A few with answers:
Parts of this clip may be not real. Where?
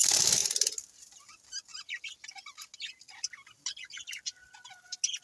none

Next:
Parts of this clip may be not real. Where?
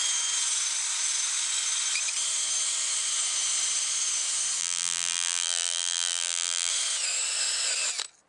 4.6-6.7 (vocoder, BigVGAN v2)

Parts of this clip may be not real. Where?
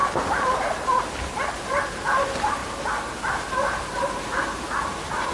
none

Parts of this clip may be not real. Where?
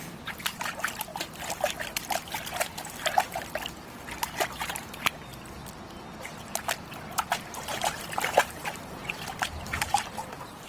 0.0-1.1 (vocoder, BigVGAN v2); 4.2-5.3; 6.2-10.7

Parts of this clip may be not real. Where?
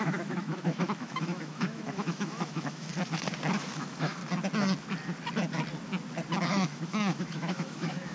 0.0-2.9 (autoencoder, DAC-VAE); 3.5-4.2; 6.5-8.1